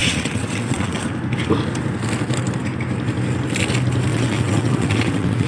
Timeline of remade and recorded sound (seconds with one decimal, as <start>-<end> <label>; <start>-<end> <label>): 0.0-1.0 remade; 1.0-4.1 recorded; 4.1-5.5 remade